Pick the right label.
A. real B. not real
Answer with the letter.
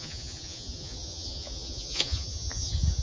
B